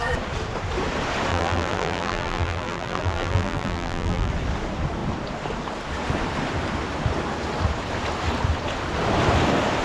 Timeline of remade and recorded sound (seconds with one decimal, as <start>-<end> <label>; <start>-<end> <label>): 0.0-1.3 recorded; 1.3-4.3 remade; 4.3-9.8 recorded